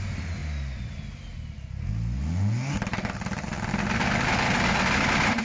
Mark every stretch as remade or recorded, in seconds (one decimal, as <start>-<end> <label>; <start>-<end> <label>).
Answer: 0.0-5.4 recorded